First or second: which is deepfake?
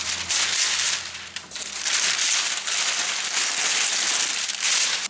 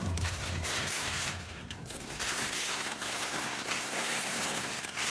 second